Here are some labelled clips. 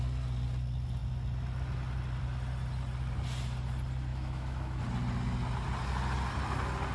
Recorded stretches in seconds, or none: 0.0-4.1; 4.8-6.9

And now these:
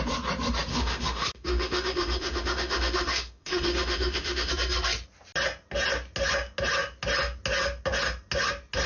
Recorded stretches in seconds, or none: 0.0-0.7; 4.5-8.9

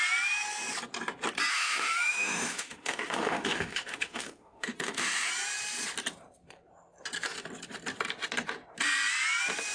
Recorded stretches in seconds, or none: 0.0-1.5; 5.3-9.7